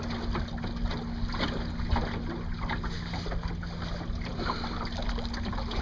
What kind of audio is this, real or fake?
real